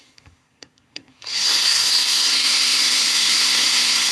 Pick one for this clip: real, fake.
fake